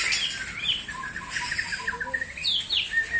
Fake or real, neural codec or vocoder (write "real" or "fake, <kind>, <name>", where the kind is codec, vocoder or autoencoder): real